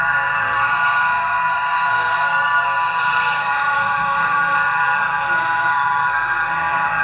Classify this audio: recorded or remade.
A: remade